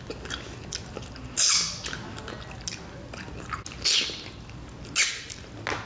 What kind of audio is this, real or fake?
real